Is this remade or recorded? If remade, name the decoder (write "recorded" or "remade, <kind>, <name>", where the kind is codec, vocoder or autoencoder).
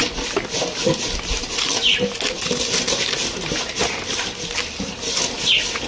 recorded